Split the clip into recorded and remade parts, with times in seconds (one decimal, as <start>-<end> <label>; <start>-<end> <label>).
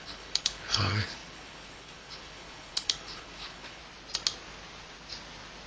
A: 0.0-3.8 remade; 3.8-5.7 recorded